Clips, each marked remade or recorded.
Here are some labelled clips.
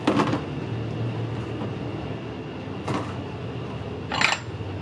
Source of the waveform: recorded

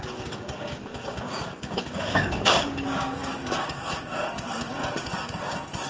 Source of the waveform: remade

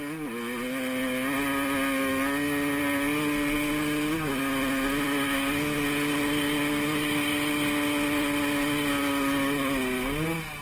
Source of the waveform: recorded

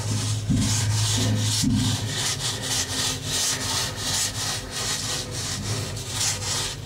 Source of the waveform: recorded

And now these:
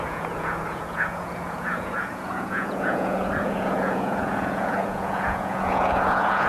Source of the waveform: remade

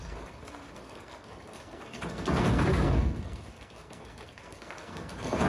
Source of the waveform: remade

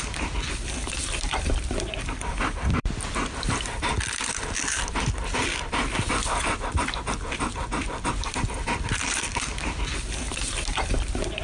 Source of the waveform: remade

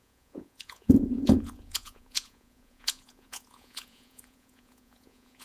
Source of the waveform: remade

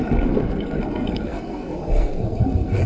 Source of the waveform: remade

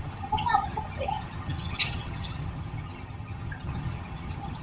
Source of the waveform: remade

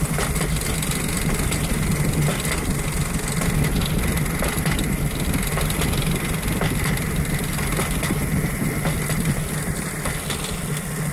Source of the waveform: recorded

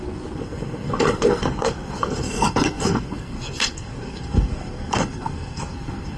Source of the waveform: remade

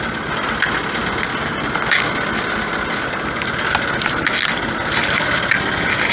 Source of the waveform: recorded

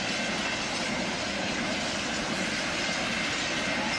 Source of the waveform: recorded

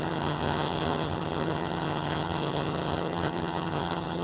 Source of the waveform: remade